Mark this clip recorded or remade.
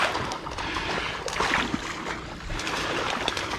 recorded